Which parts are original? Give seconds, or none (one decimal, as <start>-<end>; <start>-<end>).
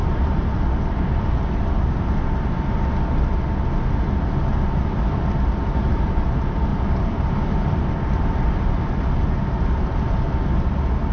0.5-6.7; 7.8-9.9; 10.4-11.1